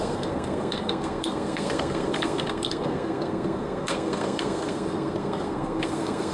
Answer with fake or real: fake